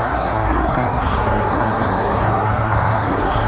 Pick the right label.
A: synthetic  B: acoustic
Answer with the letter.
A